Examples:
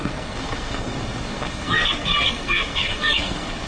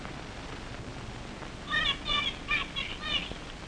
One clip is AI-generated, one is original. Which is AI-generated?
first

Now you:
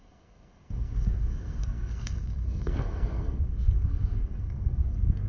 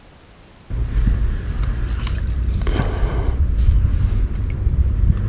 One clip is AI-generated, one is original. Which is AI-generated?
first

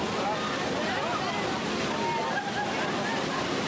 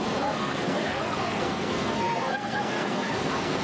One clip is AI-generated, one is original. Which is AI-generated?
second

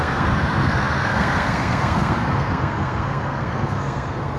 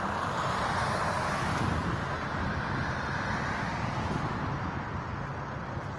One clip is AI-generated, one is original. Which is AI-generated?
first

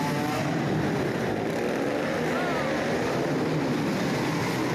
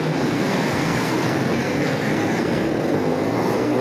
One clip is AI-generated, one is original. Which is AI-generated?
second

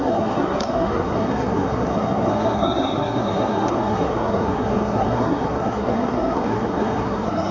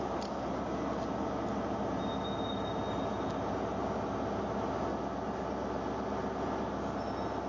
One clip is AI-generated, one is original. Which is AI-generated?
first